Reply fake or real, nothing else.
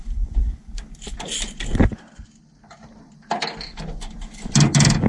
real